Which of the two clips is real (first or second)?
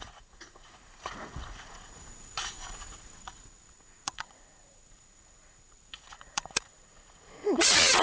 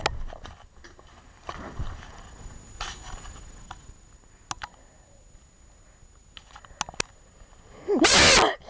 second